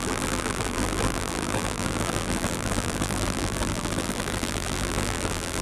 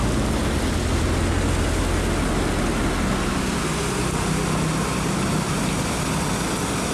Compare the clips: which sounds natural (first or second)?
second